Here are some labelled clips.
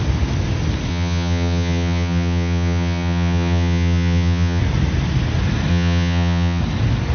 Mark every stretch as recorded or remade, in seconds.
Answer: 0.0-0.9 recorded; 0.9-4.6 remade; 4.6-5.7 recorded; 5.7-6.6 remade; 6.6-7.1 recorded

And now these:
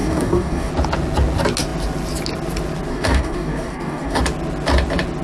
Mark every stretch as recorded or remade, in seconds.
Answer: 0.0-0.7 remade; 0.7-2.9 recorded; 2.9-4.2 remade; 4.2-5.2 recorded

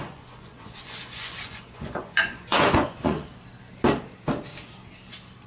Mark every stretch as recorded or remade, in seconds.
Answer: 0.0-3.3 remade; 3.3-5.5 recorded

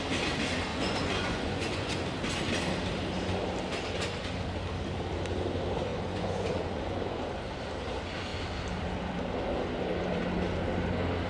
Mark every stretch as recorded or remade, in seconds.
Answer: 0.0-0.7 recorded; 0.7-2.0 remade; 2.0-5.9 recorded; 5.9-7.3 remade; 7.3-11.3 recorded

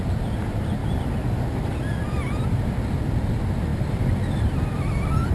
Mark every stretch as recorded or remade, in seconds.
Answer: 0.0-5.3 recorded

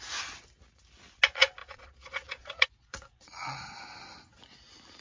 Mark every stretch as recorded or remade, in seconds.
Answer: 0.0-1.6 recorded; 1.6-3.6 remade; 3.6-5.0 recorded

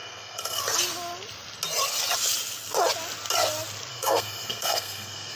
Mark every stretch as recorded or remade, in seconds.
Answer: 0.0-0.6 remade; 0.6-3.9 recorded; 3.9-5.4 remade

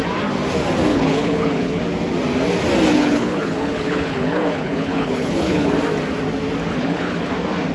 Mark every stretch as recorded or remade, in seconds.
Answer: 0.0-0.9 recorded; 0.9-1.8 remade; 1.8-2.9 recorded; 2.9-5.7 remade; 5.7-6.7 recorded; 6.7-7.3 remade; 7.3-7.7 recorded